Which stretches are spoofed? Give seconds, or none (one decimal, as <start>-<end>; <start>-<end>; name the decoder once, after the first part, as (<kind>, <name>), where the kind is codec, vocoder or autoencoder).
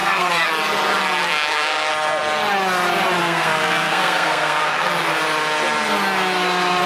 0.0-0.5 (codec, SNAC); 1.2-1.9; 3.2-4.9